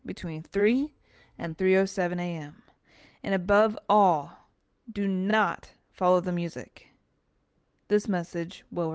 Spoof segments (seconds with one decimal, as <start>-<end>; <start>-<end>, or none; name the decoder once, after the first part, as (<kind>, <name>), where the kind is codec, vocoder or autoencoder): 0.6-1.6 (codec, SNAC)